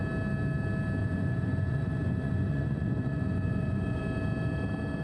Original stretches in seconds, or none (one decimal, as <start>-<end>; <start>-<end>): 0.0-1.0; 4.0-5.0